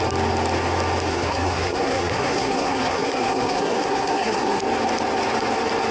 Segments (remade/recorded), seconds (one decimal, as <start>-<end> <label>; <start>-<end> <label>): 0.0-1.1 recorded; 1.1-4.6 remade; 4.6-5.9 recorded